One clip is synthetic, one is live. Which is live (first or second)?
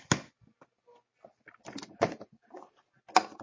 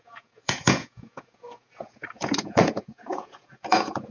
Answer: first